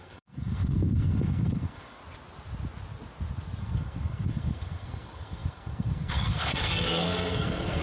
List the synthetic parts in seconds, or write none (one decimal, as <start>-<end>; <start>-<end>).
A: 0.0-2.0; 3.6-7.8